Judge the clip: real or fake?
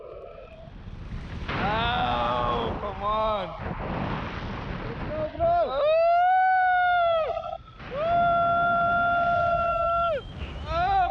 real